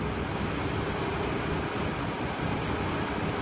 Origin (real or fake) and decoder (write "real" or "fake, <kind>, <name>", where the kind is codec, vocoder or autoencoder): real